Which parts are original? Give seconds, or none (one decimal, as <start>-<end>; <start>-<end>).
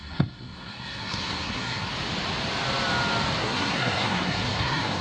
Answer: 1.9-3.4